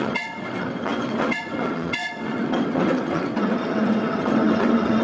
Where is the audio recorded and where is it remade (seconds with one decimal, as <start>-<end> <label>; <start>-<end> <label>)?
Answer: 0.0-5.0 remade